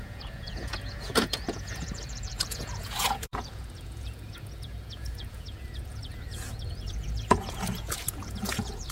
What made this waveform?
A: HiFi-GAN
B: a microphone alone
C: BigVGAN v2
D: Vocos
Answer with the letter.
D